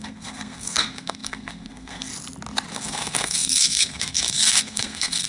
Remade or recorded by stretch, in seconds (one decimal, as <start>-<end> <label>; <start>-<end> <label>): 0.0-2.1 remade; 2.1-2.7 recorded; 2.7-5.3 remade